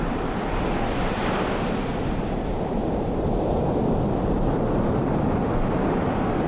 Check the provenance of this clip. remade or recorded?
recorded